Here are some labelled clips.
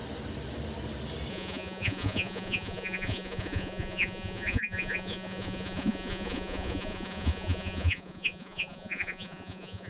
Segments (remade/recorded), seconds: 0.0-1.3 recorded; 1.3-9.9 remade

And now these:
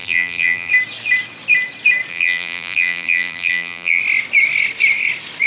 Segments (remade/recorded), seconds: 0.0-0.7 remade; 0.7-2.1 recorded; 2.1-4.0 remade; 4.0-5.5 recorded

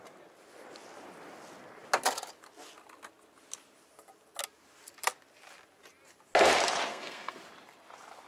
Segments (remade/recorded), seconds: 0.0-6.9 recorded; 6.9-7.4 remade; 7.4-8.3 recorded